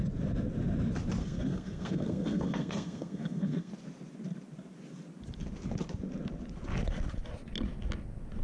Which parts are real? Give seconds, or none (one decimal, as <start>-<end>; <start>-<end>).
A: 0.0-1.2; 3.7-8.4